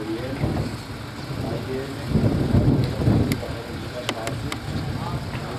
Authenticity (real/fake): real